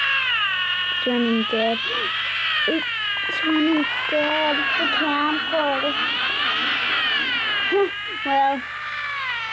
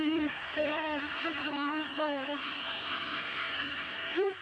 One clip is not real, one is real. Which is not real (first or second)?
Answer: second